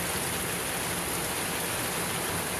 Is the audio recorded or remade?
recorded